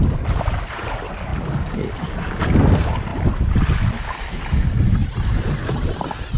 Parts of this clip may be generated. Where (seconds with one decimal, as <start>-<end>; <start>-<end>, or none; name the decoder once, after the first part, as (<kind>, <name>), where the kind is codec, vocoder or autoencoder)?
3.1-4.7 (vocoder, BigVGAN v2)